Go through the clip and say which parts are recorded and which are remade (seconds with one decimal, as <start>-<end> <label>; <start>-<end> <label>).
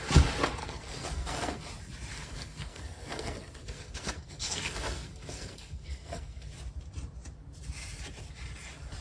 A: 0.0-0.6 recorded; 0.6-1.7 remade; 1.7-2.1 recorded; 2.1-6.5 remade; 6.5-9.0 recorded